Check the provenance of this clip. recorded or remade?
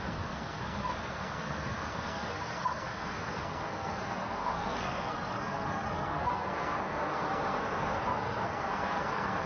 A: remade